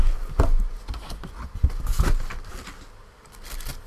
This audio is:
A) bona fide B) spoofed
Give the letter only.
A